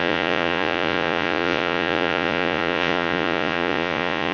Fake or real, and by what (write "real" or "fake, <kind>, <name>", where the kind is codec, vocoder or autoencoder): fake, vocoder, Vocos